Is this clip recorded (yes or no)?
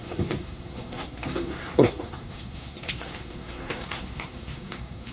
no